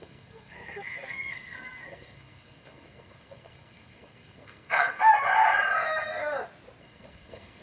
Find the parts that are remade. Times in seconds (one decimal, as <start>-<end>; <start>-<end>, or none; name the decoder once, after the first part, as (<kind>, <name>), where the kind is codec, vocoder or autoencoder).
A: 0.0-5.1 (codec, SNAC); 6.8-7.6